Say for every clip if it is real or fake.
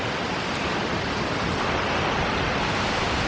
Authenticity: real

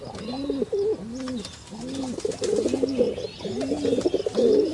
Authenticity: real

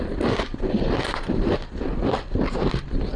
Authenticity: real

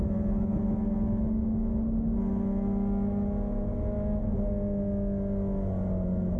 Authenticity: real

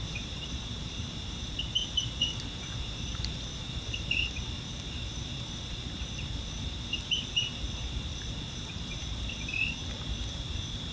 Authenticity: fake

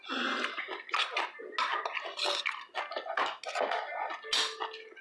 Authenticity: real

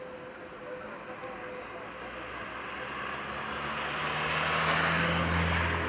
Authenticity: real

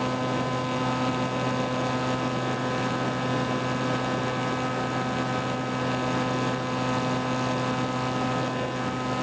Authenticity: real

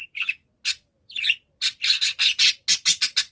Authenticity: real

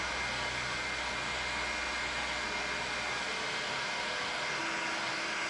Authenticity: real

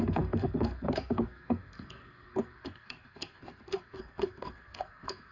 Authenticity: fake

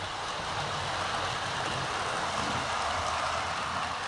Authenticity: real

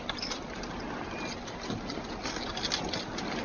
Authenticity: real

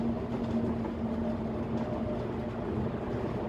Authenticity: real